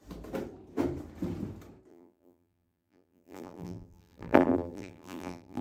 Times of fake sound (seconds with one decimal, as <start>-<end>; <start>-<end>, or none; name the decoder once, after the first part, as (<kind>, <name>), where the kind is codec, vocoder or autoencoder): 1.9-5.6 (vocoder, BigVGAN v2)